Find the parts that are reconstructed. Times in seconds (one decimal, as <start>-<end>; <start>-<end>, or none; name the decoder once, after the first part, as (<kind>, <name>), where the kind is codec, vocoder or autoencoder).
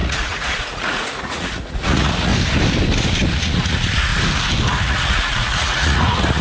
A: 0.0-2.3 (vocoder, Vocos); 3.3-4.1; 4.8-6.4